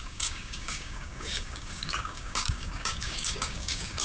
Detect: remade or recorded remade